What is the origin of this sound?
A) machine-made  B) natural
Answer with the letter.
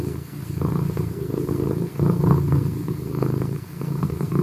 A